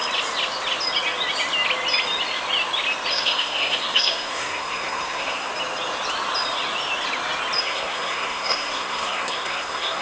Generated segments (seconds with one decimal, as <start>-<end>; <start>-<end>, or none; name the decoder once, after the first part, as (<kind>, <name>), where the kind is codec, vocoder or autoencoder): 3.1-5.5 (codec, SNAC); 7.6-10.0